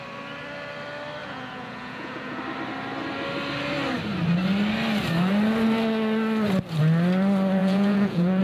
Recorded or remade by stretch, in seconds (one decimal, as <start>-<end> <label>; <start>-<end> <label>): 0.0-1.2 recorded; 1.2-2.4 remade; 2.4-7.6 recorded; 7.6-8.4 remade